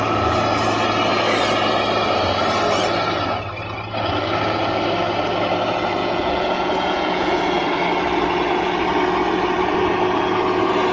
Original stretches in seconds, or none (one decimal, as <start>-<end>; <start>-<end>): 0.0-6.0; 7.6-10.9